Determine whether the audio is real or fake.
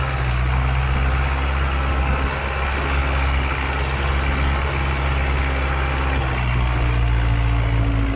real